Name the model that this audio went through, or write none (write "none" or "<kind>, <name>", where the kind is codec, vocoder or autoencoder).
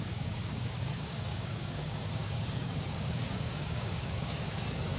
codec, DAC